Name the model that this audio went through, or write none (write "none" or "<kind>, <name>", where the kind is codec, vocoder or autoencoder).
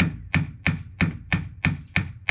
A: none